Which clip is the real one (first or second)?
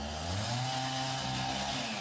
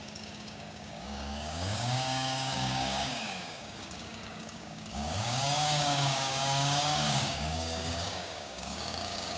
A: first